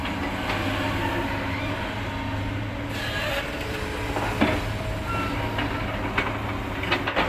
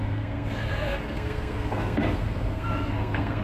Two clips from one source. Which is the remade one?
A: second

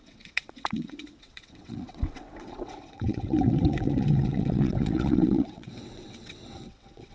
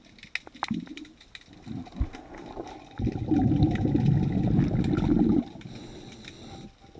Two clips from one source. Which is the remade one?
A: first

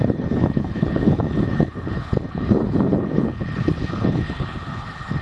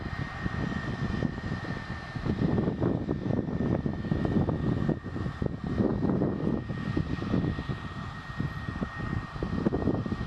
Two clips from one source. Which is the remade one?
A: first